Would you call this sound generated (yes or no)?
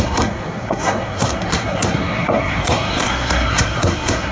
yes